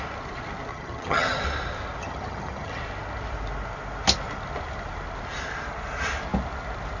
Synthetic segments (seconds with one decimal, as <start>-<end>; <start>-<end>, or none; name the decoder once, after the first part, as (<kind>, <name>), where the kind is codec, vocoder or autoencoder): 0.7-1.4 (vocoder, HiFi-GAN); 2.0-2.8